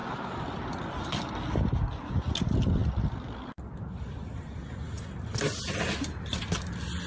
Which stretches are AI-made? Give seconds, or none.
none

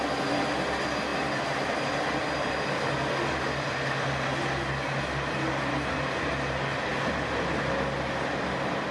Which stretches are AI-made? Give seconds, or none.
none